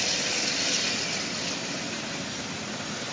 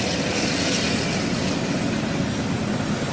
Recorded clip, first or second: second